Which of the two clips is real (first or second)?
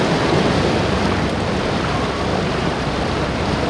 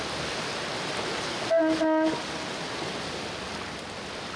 second